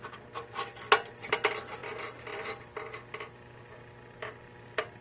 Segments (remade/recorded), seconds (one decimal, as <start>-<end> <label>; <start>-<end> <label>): 0.0-5.0 recorded